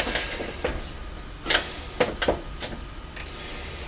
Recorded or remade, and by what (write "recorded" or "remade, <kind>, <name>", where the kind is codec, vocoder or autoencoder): recorded